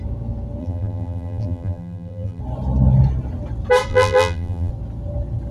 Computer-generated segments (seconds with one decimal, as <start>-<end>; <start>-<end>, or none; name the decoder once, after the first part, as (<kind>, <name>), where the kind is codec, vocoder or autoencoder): 0.6-2.4 (vocoder, BigVGAN v2); 3.9-4.7